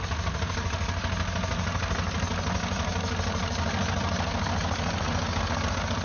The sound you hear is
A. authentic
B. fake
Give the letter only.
A